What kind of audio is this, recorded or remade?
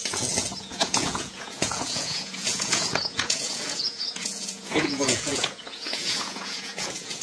remade